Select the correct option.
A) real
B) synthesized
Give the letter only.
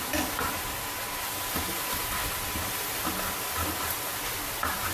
A